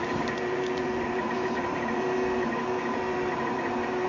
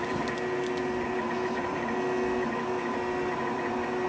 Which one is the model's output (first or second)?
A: first